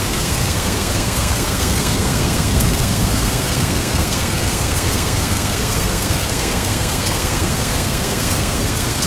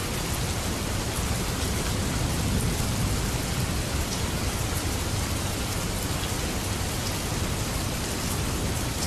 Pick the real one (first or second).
second